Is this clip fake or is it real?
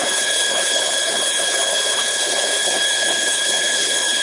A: fake